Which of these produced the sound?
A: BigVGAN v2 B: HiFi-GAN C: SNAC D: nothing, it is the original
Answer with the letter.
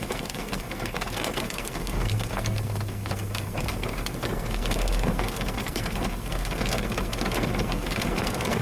C